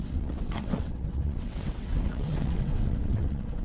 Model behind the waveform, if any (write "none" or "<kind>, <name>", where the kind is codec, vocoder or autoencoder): vocoder, WaveNeXt